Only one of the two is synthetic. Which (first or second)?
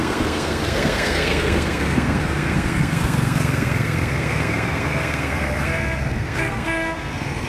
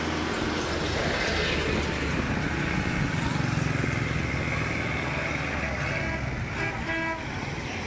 first